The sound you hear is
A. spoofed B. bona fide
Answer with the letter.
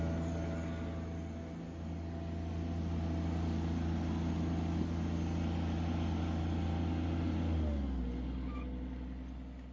B